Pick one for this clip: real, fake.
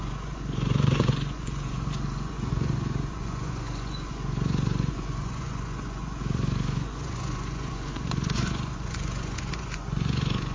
fake